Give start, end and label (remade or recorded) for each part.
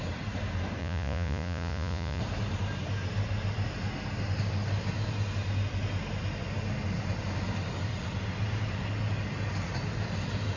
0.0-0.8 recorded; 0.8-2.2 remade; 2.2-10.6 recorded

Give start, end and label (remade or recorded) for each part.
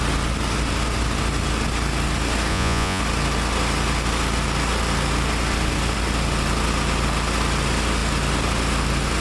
0.0-2.5 recorded; 2.5-3.0 remade; 3.0-9.2 recorded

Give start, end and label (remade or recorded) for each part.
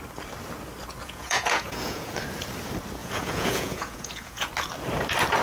0.0-1.0 recorded; 1.0-2.1 remade; 2.1-3.0 recorded; 3.0-4.5 remade; 4.5-5.4 recorded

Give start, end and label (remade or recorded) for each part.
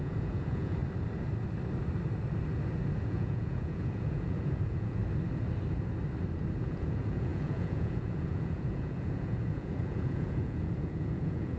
0.0-0.8 remade; 0.8-3.1 recorded; 3.1-5.0 remade; 5.0-6.6 recorded; 6.6-11.6 remade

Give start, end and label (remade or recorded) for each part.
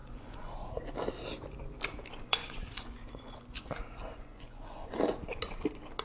0.0-0.7 remade; 0.7-2.3 recorded; 2.3-4.9 remade; 4.9-6.0 recorded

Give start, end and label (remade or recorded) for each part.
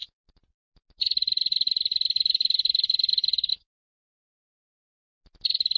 0.0-5.8 recorded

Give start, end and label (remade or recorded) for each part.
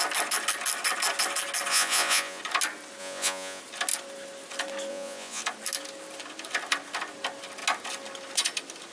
0.0-1.7 recorded; 1.7-2.4 remade; 2.4-3.0 recorded; 3.0-3.6 remade; 3.6-4.9 recorded; 4.9-5.4 remade; 5.4-8.9 recorded